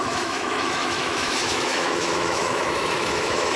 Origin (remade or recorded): remade